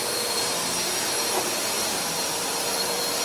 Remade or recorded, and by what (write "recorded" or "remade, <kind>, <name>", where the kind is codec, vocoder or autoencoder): remade, vocoder, BigVGAN v2